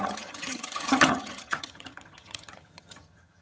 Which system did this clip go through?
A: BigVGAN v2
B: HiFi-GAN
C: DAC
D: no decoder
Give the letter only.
B